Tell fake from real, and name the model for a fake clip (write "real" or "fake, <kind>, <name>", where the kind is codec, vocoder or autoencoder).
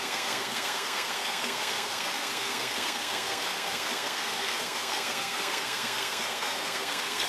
fake, codec, SNAC